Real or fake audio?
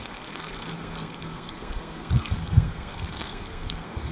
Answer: fake